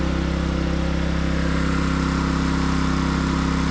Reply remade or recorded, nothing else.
recorded